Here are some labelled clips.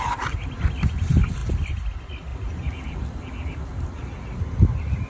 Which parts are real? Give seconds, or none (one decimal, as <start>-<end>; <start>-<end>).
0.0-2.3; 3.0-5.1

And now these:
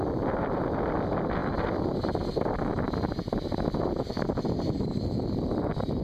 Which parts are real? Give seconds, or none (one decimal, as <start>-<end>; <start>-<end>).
0.0-1.4; 2.0-2.7

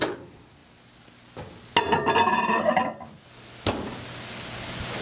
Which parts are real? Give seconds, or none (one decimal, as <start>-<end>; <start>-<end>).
0.0-5.0

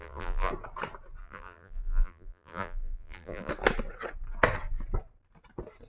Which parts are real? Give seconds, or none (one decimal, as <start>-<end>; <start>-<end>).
0.5-1.2; 3.5-5.9

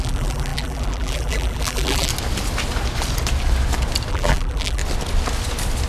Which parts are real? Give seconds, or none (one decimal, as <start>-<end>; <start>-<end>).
2.1-4.1; 4.8-5.9

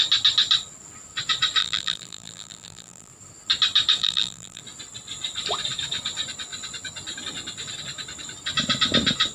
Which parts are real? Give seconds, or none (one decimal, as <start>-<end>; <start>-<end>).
0.0-1.6; 3.1-4.0; 4.6-9.3

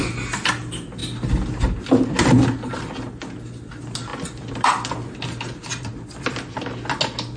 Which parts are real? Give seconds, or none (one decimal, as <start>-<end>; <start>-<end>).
0.0-4.1; 4.9-5.7; 6.6-7.4

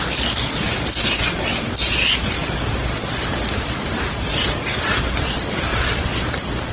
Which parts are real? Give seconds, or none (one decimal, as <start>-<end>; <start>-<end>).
0.0-5.7